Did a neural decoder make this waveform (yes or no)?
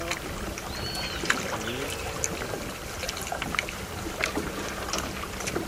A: no